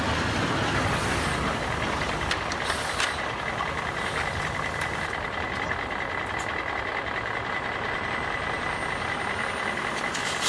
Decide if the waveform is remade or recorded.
recorded